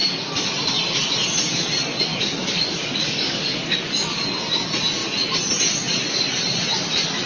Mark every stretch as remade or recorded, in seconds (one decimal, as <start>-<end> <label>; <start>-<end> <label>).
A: 0.0-2.1 recorded; 2.1-4.2 remade; 4.2-7.3 recorded